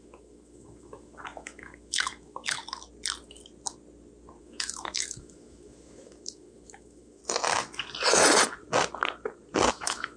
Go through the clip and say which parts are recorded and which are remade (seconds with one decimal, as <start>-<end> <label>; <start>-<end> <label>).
0.0-2.6 remade; 2.6-4.4 recorded; 4.4-7.2 remade; 7.2-9.7 recorded; 9.7-10.2 remade